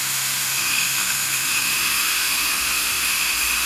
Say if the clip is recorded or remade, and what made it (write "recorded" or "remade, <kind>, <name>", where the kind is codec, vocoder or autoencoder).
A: remade, autoencoder, DAC-VAE